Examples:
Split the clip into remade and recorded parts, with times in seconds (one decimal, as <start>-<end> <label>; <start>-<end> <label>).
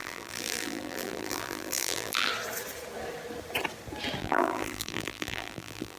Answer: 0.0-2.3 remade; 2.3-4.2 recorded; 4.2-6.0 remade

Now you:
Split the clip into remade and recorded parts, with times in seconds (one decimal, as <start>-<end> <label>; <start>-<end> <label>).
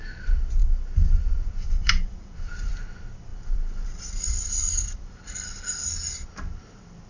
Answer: 0.0-1.8 recorded; 1.8-2.7 remade; 2.7-3.3 recorded; 3.3-5.9 remade; 5.9-7.1 recorded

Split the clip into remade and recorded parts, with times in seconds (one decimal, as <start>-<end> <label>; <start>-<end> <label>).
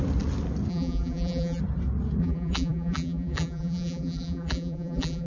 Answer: 0.0-0.7 recorded; 0.7-1.6 remade; 1.6-2.2 recorded; 2.2-5.3 remade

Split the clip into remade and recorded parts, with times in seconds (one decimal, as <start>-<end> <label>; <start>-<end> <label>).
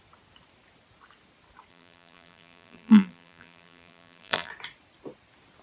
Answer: 0.0-1.7 recorded; 1.7-4.5 remade; 4.5-5.6 recorded